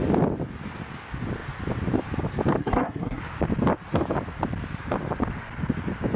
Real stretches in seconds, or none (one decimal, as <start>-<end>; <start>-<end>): 0.0-2.6; 3.2-6.2